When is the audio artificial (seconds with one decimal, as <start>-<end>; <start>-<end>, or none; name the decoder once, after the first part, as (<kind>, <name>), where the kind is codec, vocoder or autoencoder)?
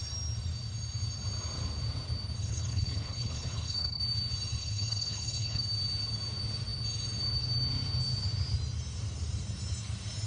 2.4-4.0 (codec, HILCodec); 4.6-5.6